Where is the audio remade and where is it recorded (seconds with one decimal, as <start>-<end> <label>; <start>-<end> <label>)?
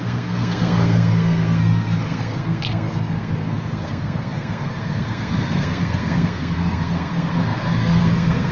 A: 0.0-8.5 remade